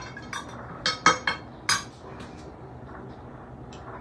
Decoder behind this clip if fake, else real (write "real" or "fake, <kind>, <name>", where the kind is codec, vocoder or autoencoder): real